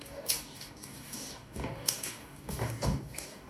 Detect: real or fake fake